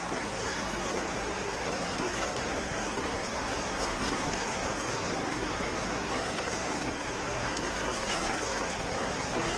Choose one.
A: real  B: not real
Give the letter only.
B